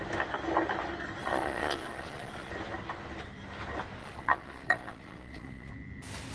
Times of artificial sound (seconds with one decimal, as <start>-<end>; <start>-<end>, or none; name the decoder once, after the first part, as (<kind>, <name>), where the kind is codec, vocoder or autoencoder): 1.2-2.5 (vocoder, Vocos); 4.0-5.7